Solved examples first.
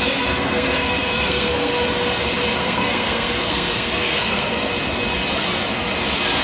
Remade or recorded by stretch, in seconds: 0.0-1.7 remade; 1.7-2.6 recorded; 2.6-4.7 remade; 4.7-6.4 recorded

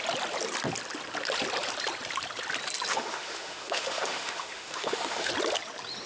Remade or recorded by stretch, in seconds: 0.0-2.9 recorded; 2.9-5.3 remade; 5.3-6.1 recorded

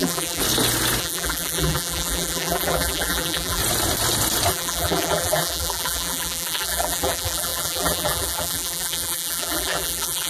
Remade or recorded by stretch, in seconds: 0.0-0.4 remade; 0.4-1.0 recorded; 1.0-3.6 remade; 3.6-4.5 recorded; 4.5-10.3 remade

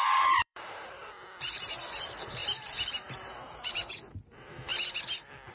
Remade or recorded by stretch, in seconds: 0.0-1.0 remade; 1.0-2.0 recorded; 2.0-4.7 remade; 4.7-5.5 recorded